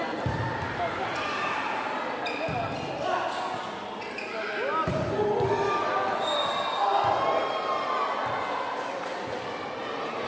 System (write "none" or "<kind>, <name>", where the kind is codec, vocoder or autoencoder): none